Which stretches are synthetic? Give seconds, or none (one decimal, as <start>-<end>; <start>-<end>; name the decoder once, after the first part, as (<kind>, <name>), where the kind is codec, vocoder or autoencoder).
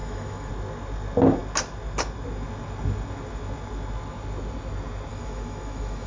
0.0-0.5 (autoencoder, DAC-VAE); 5.1-6.1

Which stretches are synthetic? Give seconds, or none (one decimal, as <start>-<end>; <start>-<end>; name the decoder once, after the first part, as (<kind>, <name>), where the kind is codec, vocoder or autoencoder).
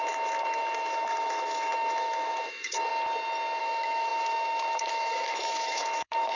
0.0-2.9 (autoencoder, DAC-VAE); 3.6-6.3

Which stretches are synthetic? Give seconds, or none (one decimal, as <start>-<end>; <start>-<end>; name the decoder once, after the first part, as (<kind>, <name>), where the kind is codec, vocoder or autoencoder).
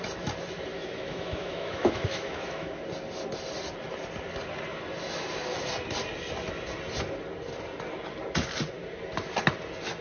0.7-2.8 (autoencoder, DAC-VAE)